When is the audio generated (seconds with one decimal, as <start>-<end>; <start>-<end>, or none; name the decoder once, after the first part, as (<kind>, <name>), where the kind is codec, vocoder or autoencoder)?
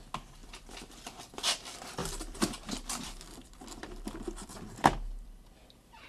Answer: 0.4-1.0 (vocoder, BigVGAN v2); 2.0-5.5